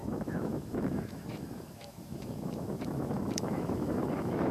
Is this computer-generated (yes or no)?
yes